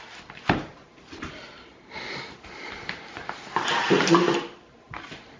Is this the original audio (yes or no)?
no